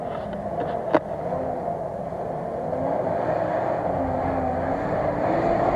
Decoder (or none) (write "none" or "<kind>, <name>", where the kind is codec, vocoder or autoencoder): none